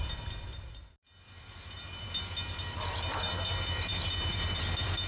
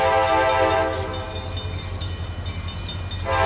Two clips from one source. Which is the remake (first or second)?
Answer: first